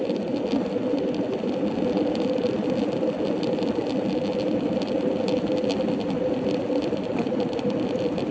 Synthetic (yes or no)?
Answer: no